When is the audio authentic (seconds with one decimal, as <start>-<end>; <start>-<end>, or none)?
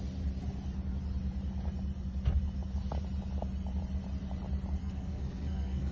0.0-4.8